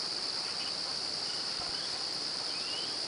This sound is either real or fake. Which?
fake